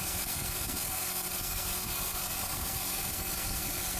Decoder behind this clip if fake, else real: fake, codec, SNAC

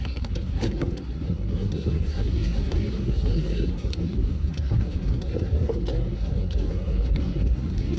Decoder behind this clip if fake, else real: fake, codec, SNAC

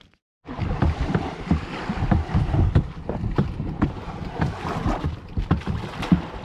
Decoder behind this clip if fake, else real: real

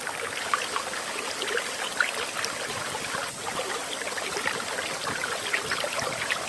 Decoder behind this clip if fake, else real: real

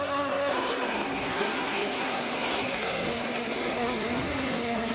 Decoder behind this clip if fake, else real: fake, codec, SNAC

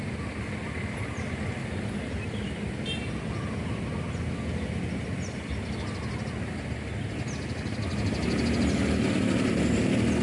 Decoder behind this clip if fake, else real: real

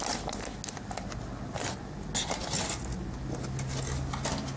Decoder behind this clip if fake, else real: real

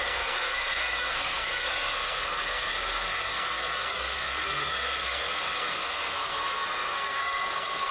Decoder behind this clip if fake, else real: fake, codec, SNAC